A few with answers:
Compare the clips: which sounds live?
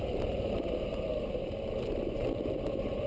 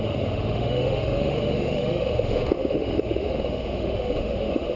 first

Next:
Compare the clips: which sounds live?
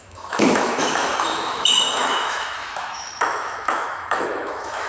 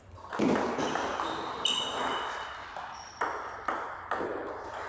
second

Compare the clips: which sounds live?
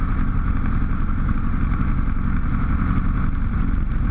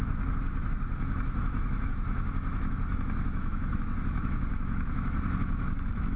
first